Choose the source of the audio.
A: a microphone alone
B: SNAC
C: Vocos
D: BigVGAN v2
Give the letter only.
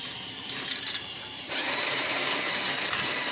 D